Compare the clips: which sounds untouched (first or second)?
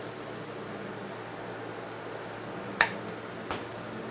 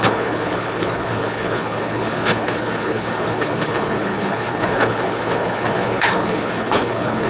first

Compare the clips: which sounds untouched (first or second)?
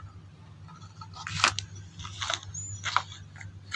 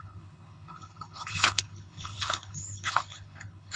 first